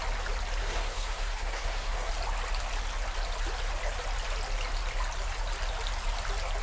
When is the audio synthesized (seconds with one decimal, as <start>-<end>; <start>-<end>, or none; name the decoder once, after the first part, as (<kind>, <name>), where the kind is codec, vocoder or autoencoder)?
0.6-2.1 (codec, SNAC)